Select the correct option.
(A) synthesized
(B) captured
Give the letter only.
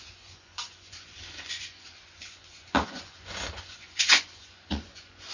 A